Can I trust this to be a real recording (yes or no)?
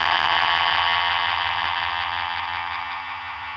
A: no